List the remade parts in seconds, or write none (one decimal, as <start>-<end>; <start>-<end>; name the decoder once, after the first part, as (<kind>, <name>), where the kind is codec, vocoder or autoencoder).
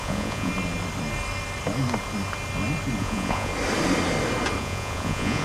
0.0-0.5 (vocoder, Vocos); 3.0-3.5; 4.6-5.4